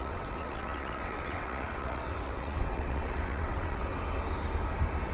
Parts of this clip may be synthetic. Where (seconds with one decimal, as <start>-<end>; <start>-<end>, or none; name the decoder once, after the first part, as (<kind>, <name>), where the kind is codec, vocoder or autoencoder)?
0.0-3.9 (vocoder, WaveNeXt)